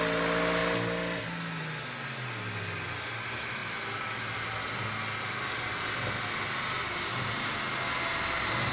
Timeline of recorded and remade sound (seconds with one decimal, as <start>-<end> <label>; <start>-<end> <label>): 0.0-8.7 recorded